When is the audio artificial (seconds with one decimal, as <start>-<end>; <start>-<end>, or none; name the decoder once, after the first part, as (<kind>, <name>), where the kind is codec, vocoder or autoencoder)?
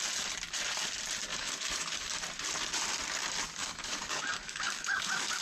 1.3-2.2 (codec, DAC); 3.6-5.4